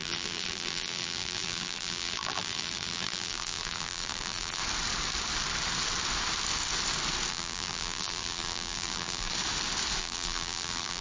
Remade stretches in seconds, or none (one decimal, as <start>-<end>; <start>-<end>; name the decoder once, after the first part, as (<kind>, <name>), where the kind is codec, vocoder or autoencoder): 0.0-4.6 (vocoder, BigVGAN v2); 7.3-9.3; 10.0-11.0